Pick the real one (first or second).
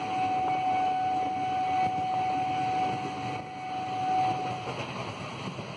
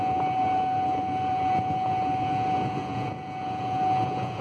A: first